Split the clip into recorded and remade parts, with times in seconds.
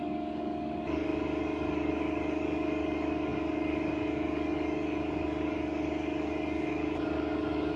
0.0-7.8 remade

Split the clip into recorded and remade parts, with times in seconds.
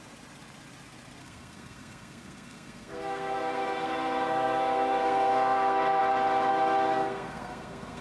0.0-1.2 recorded; 1.2-6.0 remade; 6.0-6.5 recorded; 6.5-8.0 remade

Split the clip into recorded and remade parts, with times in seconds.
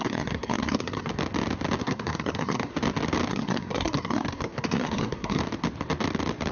0.0-1.1 remade; 1.1-1.8 recorded; 1.8-2.7 remade; 2.7-3.3 recorded; 3.3-5.4 remade; 5.4-6.5 recorded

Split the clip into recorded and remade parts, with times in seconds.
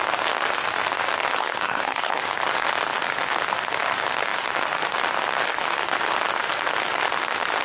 0.0-1.4 recorded; 1.4-2.2 remade; 2.2-7.6 recorded